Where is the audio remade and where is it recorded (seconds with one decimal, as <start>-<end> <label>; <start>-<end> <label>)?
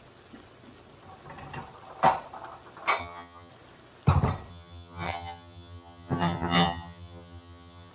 0.0-3.0 recorded; 3.0-3.5 remade; 3.5-4.5 recorded; 4.5-7.9 remade